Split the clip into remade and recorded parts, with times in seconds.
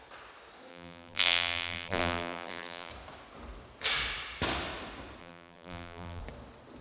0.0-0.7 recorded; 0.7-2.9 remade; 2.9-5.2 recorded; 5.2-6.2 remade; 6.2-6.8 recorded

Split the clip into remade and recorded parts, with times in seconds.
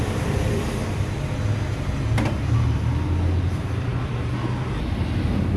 0.0-0.8 remade; 0.8-3.4 recorded; 3.4-3.9 remade; 3.9-4.7 recorded; 4.7-5.6 remade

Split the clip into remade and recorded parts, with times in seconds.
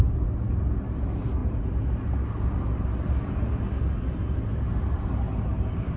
0.0-6.0 recorded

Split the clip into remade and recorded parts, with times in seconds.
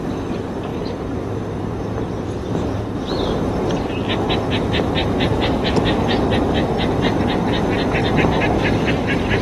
0.0-0.7 recorded; 0.7-4.0 remade; 4.0-5.0 recorded; 5.0-5.7 remade; 5.7-9.4 recorded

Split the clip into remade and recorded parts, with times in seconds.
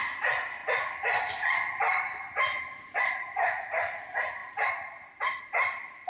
0.0-0.6 remade; 0.6-2.0 recorded; 2.0-6.1 remade